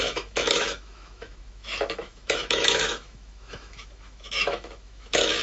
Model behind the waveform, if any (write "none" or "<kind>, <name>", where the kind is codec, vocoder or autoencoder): autoencoder, DAC-VAE